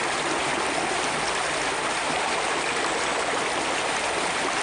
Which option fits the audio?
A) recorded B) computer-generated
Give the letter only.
A